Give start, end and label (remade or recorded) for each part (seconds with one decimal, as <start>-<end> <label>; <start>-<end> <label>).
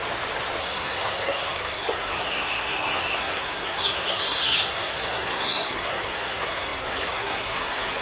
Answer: 0.0-0.6 recorded; 0.6-8.0 remade